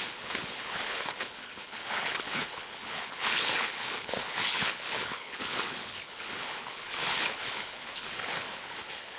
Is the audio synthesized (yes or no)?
yes